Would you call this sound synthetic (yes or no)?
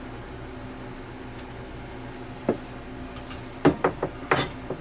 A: no